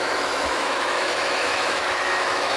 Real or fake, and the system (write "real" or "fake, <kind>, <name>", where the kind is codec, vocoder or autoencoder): fake, autoencoder, DAC-VAE